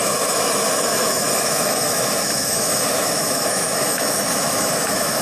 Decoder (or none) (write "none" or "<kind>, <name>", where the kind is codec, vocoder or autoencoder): autoencoder, DAC-VAE